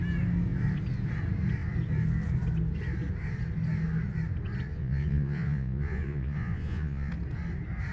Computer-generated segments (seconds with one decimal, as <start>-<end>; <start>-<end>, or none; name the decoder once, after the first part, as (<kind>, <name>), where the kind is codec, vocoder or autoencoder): 4.7-7.1 (vocoder, Vocos)